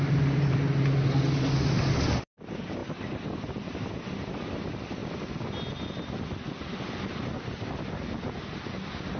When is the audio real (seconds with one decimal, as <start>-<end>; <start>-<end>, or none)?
0.0-9.2